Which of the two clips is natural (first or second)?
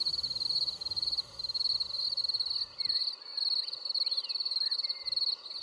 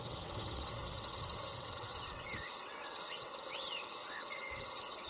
first